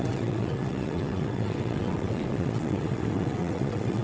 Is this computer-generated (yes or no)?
yes